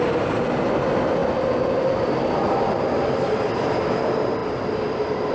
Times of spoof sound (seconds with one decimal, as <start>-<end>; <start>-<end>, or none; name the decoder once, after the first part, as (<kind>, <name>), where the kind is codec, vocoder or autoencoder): 4.4-5.3 (vocoder, BigVGAN v2)